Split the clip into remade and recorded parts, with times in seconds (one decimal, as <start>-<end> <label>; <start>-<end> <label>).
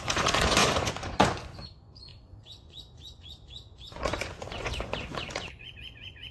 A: 0.0-6.3 remade